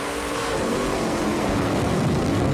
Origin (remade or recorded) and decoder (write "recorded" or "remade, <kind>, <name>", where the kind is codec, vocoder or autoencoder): remade, codec, SNAC